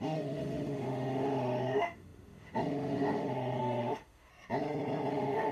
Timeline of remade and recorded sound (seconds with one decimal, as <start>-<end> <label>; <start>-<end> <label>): 0.0-4.3 remade; 4.3-5.1 recorded; 5.1-5.5 remade